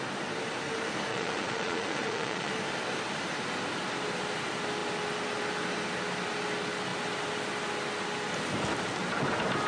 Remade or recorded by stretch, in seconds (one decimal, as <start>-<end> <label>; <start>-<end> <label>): 0.0-1.1 recorded; 1.1-2.5 remade; 2.5-9.7 recorded